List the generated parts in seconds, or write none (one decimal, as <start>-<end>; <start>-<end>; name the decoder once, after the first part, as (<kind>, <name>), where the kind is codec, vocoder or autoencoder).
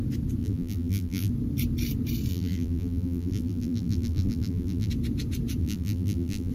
0.4-1.3 (vocoder, BigVGAN v2); 2.3-4.9; 5.6-6.5